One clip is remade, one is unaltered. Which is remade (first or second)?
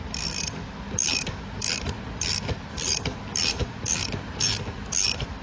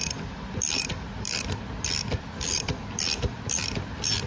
second